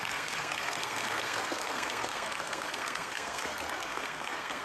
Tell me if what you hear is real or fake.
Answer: fake